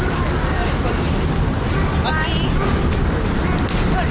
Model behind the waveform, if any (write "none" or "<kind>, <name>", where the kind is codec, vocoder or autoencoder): none